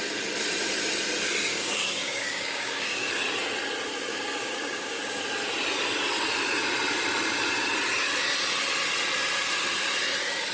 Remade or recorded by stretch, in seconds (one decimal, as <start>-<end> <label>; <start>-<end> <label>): 0.0-1.5 recorded; 1.5-3.1 remade; 3.1-4.1 recorded; 4.1-5.2 remade; 5.2-10.5 recorded